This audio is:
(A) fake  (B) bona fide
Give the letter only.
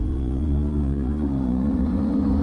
A